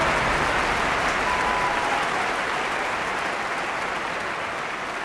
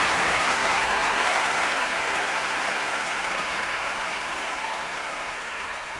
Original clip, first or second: first